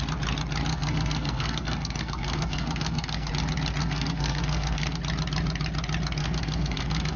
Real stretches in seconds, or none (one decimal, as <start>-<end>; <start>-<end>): 0.0-0.7; 3.3-3.8; 5.0-6.2